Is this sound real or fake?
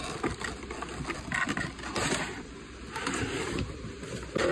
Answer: real